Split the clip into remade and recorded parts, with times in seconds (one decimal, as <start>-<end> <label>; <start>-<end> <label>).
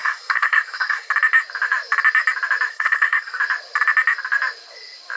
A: 0.0-1.1 remade; 1.1-2.7 recorded; 2.7-3.4 remade; 3.4-5.2 recorded